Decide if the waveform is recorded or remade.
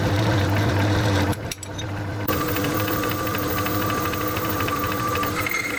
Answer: remade